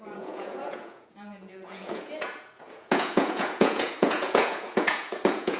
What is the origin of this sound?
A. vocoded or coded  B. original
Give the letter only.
A